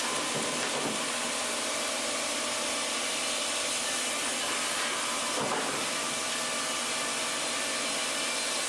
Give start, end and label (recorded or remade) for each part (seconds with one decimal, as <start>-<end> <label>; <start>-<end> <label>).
0.0-8.7 recorded